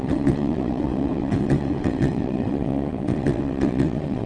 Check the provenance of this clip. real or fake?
fake